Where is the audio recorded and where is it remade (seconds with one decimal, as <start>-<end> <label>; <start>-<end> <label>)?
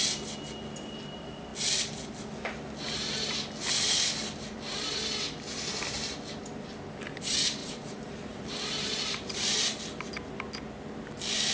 0.0-7.6 recorded; 7.6-9.5 remade; 9.5-11.5 recorded